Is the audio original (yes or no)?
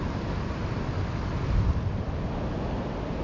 yes